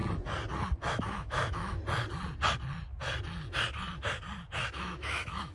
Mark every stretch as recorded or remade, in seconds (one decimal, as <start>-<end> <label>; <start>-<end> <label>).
0.0-0.9 recorded; 0.9-1.8 remade; 1.8-4.6 recorded; 4.6-5.5 remade